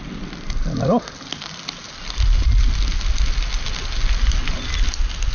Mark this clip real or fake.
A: real